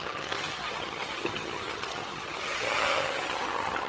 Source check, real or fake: fake